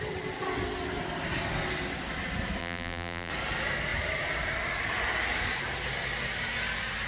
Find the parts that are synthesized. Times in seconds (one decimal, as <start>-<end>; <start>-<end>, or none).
2.6-3.3